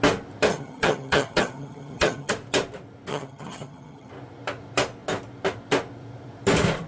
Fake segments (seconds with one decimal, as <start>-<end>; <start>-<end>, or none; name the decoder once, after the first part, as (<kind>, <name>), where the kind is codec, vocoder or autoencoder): 0.5-2.3 (vocoder, HiFi-GAN); 3.1-4.1